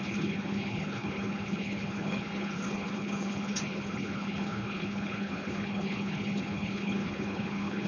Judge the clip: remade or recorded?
remade